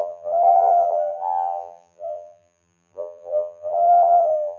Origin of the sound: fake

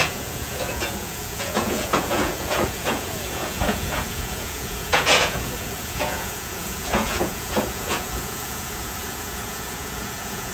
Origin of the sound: fake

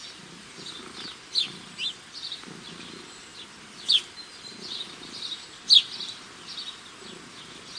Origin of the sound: real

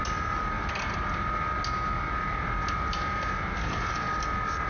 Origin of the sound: real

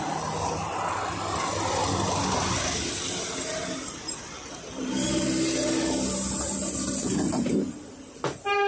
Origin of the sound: real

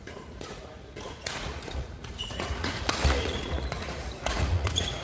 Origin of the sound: fake